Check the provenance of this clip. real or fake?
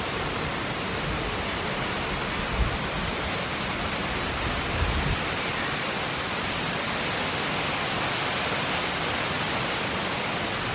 real